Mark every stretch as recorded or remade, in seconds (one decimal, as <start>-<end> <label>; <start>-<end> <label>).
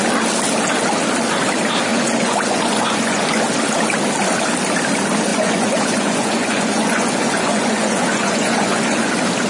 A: 0.0-1.9 recorded; 1.9-3.4 remade; 3.4-5.3 recorded; 5.3-9.1 remade; 9.1-9.5 recorded